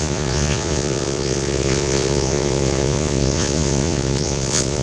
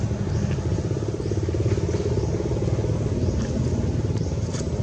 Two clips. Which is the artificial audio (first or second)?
first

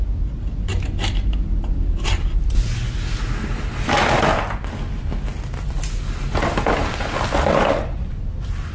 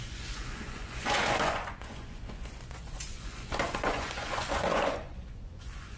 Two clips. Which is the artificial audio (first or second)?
second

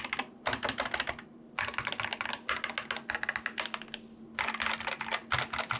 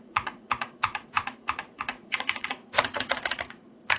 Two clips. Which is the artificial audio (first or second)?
second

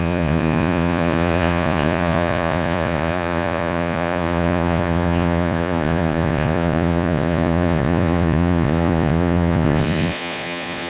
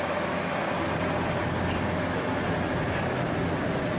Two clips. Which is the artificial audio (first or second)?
first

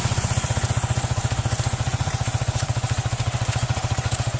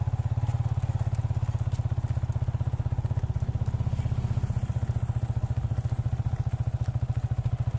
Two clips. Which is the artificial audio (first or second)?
first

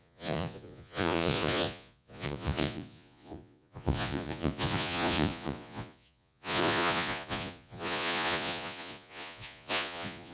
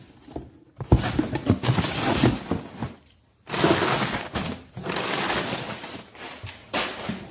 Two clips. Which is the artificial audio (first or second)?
first